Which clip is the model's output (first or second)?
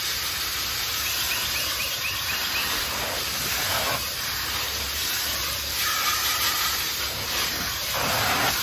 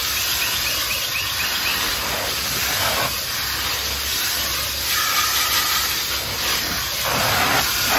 first